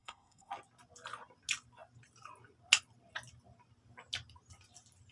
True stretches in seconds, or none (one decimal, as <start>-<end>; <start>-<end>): 0.5-5.1